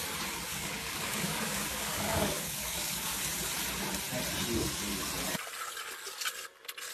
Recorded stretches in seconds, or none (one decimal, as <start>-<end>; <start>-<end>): 0.0-0.5; 3.2-6.9